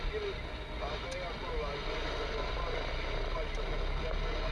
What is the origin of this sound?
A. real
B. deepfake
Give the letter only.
A